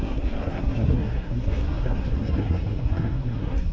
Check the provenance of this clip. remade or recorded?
remade